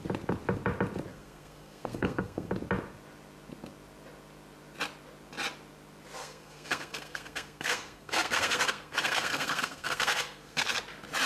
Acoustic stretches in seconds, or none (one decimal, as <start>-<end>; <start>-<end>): 0.0-1.1; 2.5-6.2; 10.8-11.3